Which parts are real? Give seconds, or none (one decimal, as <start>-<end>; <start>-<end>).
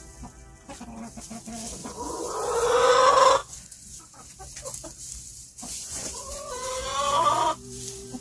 0.0-1.8; 3.0-3.4; 4.2-5.4; 7.3-8.2